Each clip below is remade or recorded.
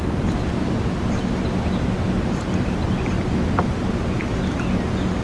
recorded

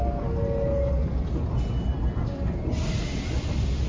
recorded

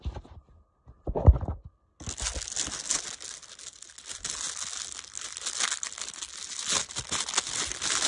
recorded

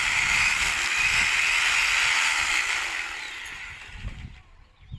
recorded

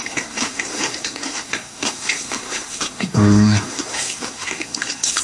remade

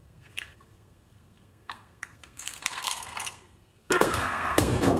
remade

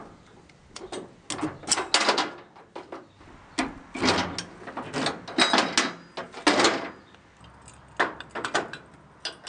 recorded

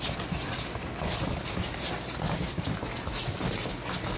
recorded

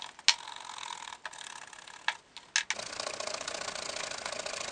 recorded